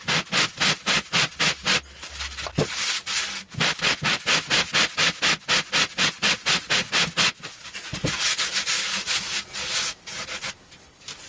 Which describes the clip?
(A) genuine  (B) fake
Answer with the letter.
A